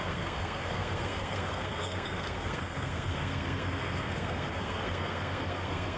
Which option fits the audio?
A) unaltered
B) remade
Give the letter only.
B